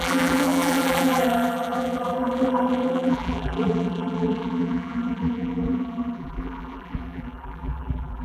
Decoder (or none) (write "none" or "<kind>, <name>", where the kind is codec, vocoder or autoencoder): vocoder, BigVGAN v2